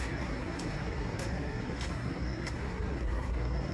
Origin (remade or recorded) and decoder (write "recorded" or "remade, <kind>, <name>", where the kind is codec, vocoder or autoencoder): remade, codec, SNAC